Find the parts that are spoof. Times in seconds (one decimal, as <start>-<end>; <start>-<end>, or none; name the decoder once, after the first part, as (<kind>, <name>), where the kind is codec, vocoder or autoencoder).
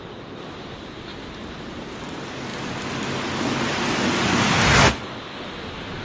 none